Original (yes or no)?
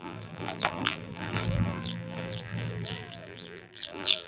no